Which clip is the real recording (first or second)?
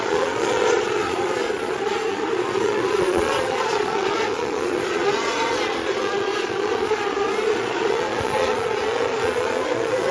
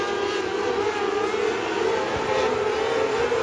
second